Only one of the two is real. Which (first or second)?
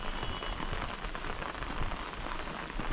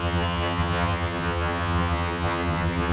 first